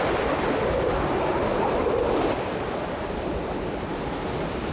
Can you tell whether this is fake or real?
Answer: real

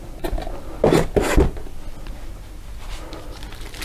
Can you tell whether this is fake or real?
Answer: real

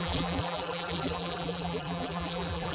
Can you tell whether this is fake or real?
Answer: fake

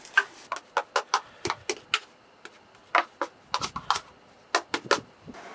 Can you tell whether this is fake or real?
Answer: real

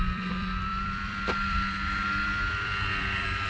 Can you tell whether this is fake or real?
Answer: fake